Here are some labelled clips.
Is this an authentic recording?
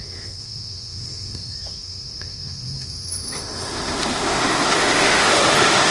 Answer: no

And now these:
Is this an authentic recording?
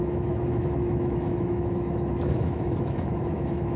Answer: no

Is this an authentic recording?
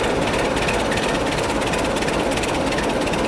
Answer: yes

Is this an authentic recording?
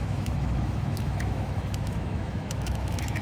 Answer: no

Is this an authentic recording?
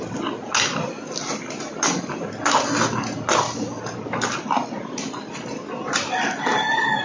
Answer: yes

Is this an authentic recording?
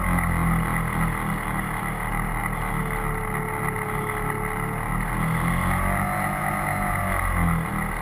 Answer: yes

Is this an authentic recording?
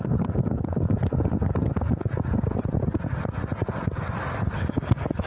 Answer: yes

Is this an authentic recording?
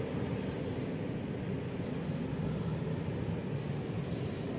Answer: yes